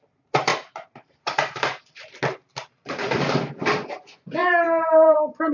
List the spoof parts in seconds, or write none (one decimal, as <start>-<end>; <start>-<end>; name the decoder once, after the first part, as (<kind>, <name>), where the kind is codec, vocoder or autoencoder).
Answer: 0.5-1.8 (vocoder, BigVGAN v2); 4.4-5.5